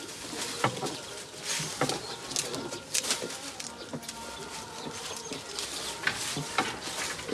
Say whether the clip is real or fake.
real